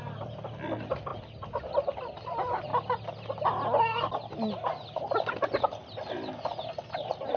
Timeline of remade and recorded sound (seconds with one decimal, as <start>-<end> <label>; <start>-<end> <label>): 0.0-1.1 remade; 1.1-1.6 recorded; 1.6-2.7 remade; 2.7-4.9 recorded; 4.9-7.4 remade